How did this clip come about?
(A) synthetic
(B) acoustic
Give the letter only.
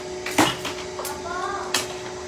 B